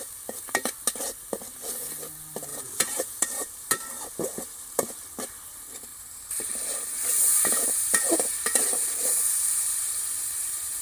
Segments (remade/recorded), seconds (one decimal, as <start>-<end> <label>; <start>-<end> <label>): 0.0-2.5 recorded; 2.5-3.7 remade; 3.7-5.9 recorded; 5.9-10.8 remade

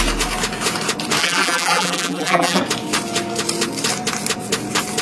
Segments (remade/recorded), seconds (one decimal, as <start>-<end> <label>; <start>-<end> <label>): 0.0-1.2 recorded; 1.2-2.6 remade; 2.6-5.0 recorded

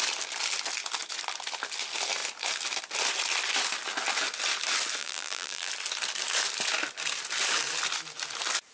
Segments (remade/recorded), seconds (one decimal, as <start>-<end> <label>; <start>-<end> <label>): 0.0-5.0 recorded; 5.0-5.7 remade; 5.7-8.7 recorded

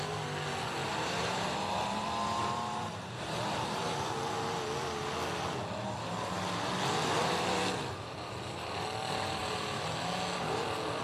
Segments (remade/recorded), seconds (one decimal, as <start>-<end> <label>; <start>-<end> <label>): 0.0-0.8 recorded; 0.8-4.1 remade; 4.1-9.4 recorded; 9.4-9.9 remade; 9.9-11.0 recorded

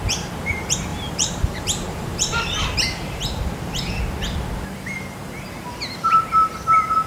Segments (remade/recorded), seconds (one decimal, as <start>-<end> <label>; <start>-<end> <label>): 0.0-0.9 recorded; 0.9-4.0 remade; 4.0-7.1 recorded